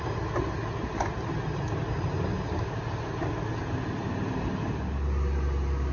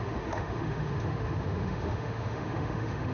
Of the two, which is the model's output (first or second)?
second